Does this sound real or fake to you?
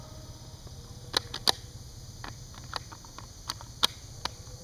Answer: real